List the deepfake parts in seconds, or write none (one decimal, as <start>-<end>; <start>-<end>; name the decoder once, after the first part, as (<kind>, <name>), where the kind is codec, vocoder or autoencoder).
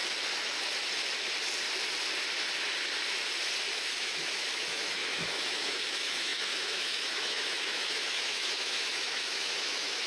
3.7-10.1 (autoencoder, DAC-VAE)